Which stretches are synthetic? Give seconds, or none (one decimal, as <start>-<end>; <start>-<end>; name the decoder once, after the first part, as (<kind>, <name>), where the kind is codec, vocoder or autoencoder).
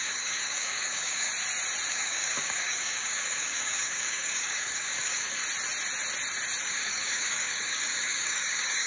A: 0.0-1.3 (codec, DAC); 1.9-5.4; 6.6-8.9